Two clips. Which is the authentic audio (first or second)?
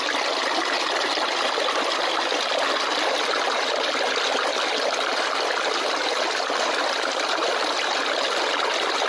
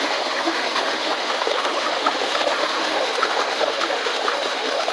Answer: first